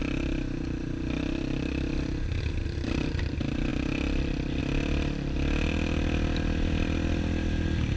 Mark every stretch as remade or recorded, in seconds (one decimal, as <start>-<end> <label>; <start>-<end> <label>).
0.0-8.0 recorded